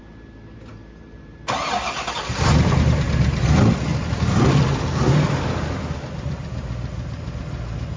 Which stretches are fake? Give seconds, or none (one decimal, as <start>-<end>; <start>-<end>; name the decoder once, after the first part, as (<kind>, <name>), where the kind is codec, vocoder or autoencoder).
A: none